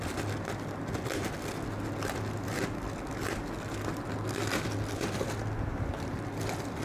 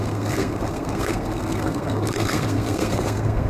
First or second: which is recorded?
first